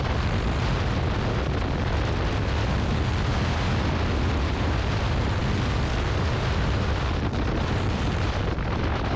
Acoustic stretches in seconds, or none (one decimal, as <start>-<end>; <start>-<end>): 0.0-9.2